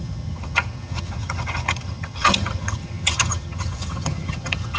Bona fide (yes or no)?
no